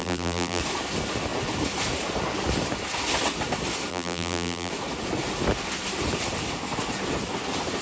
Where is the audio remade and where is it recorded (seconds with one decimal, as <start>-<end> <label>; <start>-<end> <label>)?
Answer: 0.0-0.6 remade; 0.6-3.9 recorded; 3.9-4.7 remade; 4.7-7.8 recorded